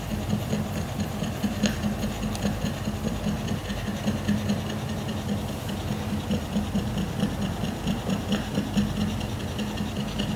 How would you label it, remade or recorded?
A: recorded